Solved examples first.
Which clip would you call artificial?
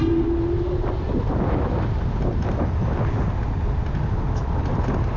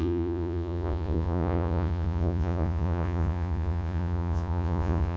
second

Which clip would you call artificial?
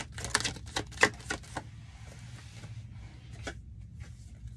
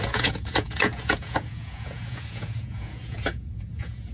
second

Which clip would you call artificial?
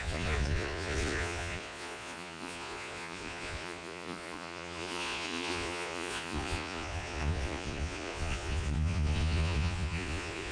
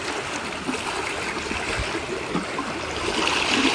first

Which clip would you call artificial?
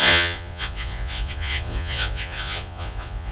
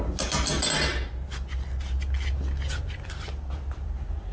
first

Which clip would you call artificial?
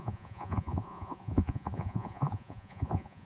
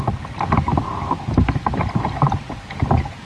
first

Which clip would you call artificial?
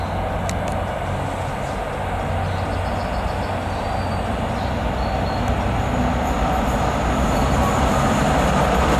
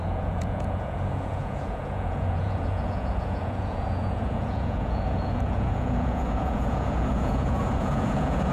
second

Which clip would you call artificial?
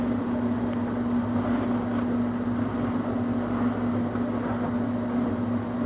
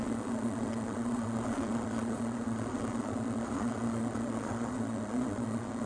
second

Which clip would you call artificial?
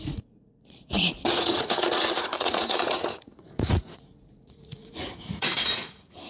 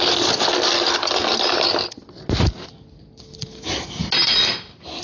first